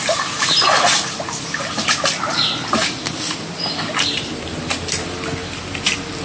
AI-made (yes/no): no